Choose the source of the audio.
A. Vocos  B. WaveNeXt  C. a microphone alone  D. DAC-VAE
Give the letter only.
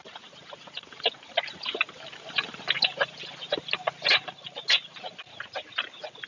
C